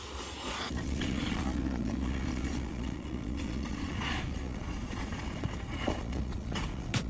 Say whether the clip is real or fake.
fake